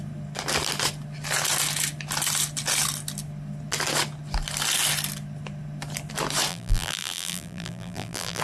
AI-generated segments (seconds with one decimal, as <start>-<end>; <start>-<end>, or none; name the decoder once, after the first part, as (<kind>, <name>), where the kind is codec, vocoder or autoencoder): 6.5-8.4 (vocoder, BigVGAN v2)